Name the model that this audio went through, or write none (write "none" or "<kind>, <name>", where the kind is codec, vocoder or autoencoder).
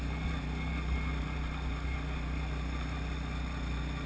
none